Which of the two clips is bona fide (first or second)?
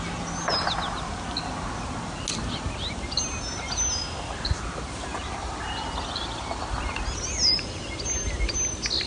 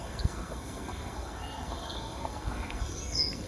first